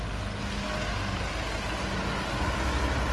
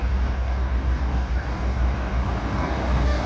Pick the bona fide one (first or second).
first